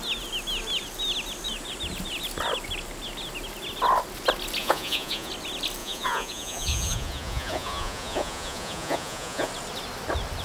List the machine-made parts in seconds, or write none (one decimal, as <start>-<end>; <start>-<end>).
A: 4.6-5.3; 5.8-9.5